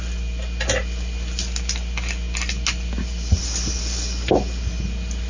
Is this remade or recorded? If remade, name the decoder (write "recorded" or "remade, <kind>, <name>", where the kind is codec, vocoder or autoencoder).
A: recorded